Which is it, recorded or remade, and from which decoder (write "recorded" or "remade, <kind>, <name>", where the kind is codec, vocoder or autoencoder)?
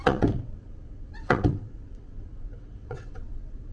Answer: remade, vocoder, WaveNeXt